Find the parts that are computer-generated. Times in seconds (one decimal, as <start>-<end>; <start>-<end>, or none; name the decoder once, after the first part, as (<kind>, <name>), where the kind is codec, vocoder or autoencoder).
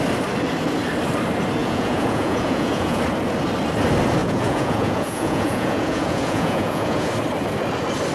1.6-3.0 (vocoder, Vocos); 4.2-7.1